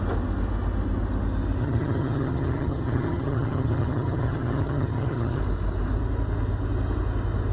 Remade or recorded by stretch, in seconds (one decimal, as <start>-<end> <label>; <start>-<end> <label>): 0.0-1.6 recorded; 1.6-5.4 remade; 5.4-7.5 recorded